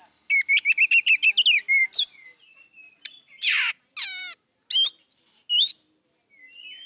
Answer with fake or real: real